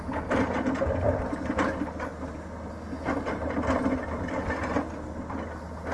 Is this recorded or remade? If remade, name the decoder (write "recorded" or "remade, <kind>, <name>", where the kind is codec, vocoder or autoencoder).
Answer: recorded